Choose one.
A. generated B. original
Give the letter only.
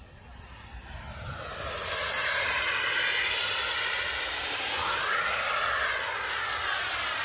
B